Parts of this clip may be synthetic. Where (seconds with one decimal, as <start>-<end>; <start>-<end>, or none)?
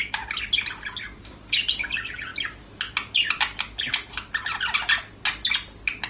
none